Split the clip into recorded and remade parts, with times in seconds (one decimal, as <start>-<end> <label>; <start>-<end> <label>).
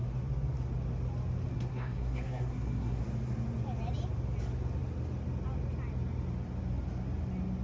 0.0-1.5 recorded; 1.5-3.0 remade; 3.0-7.6 recorded